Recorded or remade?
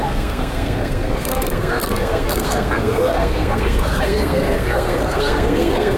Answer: remade